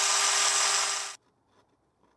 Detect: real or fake real